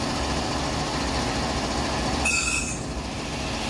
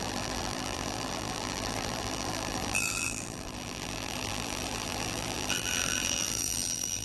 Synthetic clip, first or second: second